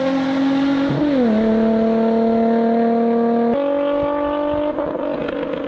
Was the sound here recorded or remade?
recorded